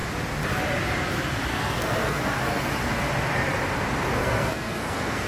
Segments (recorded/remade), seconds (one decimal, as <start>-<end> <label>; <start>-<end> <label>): 0.0-1.5 recorded; 1.5-2.2 remade; 2.2-4.2 recorded; 4.2-5.3 remade